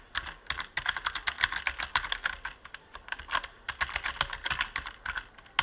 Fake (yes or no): no